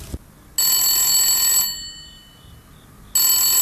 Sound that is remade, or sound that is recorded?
recorded